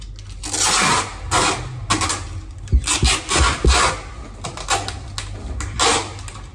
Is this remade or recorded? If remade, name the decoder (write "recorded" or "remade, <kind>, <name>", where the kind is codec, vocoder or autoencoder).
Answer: recorded